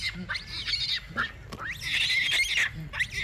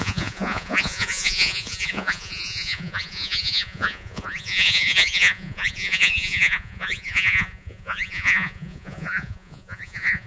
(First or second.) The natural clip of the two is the first